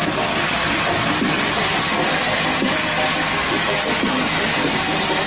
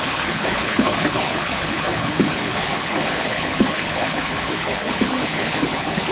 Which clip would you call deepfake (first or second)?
second